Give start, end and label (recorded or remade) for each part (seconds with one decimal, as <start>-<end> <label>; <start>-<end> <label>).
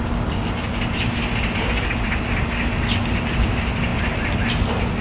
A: 0.0-5.0 recorded